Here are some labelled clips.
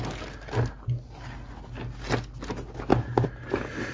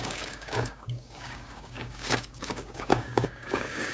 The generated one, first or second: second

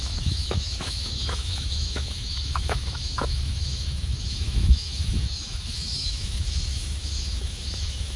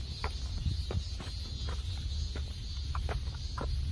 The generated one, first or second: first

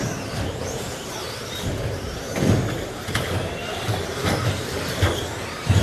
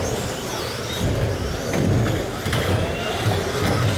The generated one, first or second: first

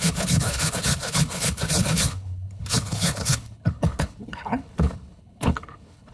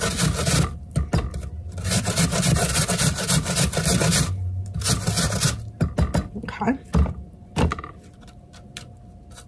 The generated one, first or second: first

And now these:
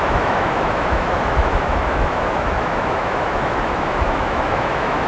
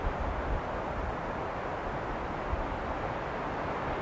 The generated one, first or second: first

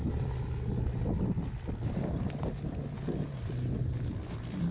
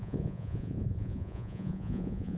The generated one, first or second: second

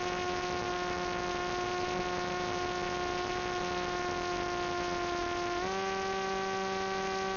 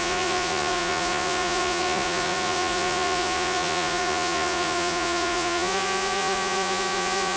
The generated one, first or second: second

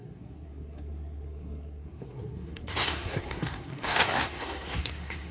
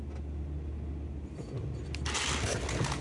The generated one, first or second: first